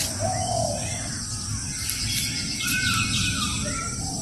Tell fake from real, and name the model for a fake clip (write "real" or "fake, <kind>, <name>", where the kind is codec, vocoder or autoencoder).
fake, vocoder, BigVGAN v2